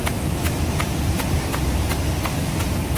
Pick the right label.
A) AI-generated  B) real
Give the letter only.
B